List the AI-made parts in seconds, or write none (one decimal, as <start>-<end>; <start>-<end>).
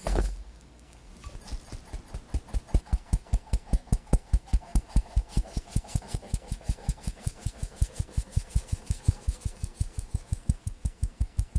0.0-1.1; 2.8-11.6